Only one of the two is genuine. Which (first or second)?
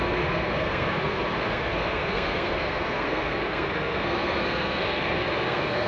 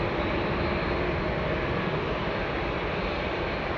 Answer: second